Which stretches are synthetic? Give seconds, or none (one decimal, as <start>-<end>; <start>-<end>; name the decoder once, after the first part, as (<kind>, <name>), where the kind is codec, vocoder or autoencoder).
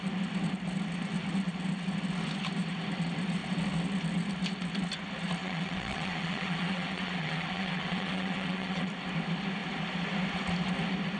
5.4-8.9 (vocoder, WaveNeXt)